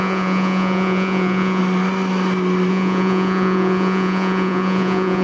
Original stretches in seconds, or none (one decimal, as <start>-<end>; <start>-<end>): 1.6-2.7